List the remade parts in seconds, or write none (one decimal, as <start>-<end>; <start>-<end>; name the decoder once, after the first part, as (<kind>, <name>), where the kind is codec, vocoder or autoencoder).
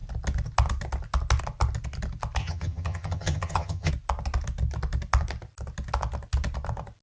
2.4-3.9 (vocoder, HiFi-GAN)